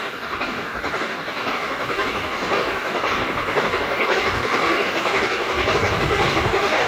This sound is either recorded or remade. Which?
remade